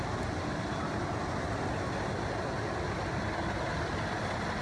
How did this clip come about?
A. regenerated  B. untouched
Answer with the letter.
B